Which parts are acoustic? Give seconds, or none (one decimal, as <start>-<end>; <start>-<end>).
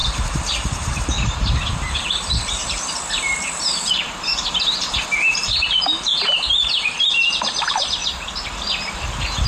8.0-8.8